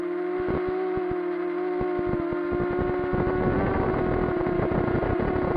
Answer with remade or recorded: recorded